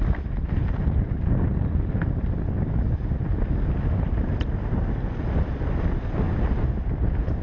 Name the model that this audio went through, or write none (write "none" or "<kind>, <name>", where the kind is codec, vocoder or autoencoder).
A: vocoder, BigVGAN v2